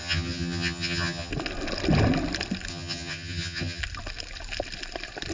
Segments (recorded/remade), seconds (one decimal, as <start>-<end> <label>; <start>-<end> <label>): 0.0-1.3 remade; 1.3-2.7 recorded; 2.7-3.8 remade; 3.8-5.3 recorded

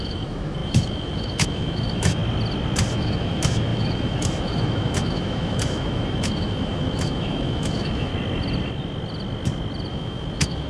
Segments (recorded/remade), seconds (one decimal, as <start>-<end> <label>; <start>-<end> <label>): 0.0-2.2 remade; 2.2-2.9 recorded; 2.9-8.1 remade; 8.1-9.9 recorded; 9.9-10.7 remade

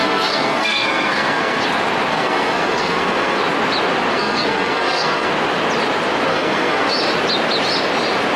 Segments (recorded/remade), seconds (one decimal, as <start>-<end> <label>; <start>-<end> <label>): 0.0-1.6 remade; 1.6-2.1 recorded; 2.1-3.4 remade; 3.4-4.1 recorded; 4.1-5.3 remade; 5.3-6.3 recorded; 6.3-6.9 remade; 6.9-8.4 recorded

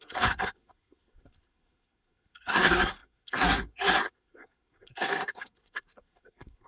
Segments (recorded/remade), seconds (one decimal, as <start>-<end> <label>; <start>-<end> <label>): 0.0-6.7 remade

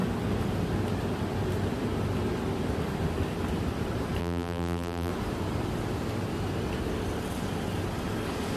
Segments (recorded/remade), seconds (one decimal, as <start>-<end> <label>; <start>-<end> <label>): 0.0-4.2 recorded; 4.2-5.1 remade; 5.1-8.6 recorded